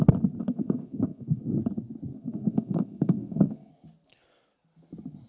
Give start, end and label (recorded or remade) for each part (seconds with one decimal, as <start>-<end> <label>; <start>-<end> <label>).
0.0-0.4 recorded; 0.4-1.4 remade; 1.4-2.1 recorded; 2.1-3.7 remade; 3.7-5.3 recorded